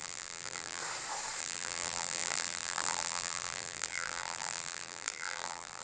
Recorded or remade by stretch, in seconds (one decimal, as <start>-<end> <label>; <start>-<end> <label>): 0.0-0.8 remade; 0.8-1.4 recorded; 1.4-5.8 remade